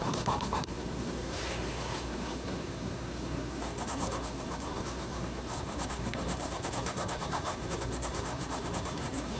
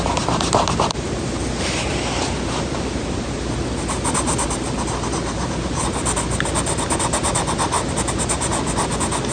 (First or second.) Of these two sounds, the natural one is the second